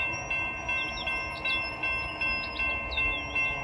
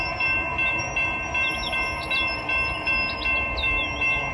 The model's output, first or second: second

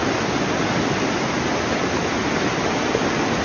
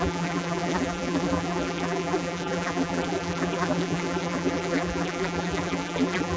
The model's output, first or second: second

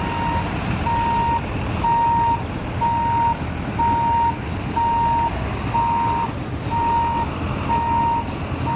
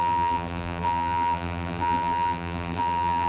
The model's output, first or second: second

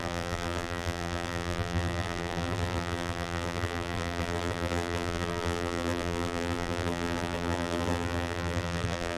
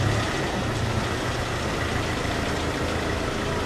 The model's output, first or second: first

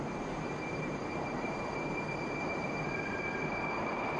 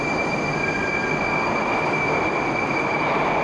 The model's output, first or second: first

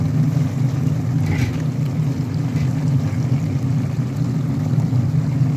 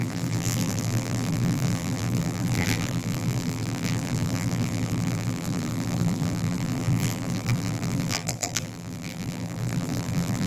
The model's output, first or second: second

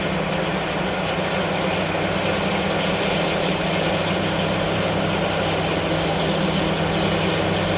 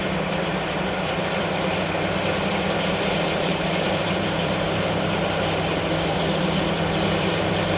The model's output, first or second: second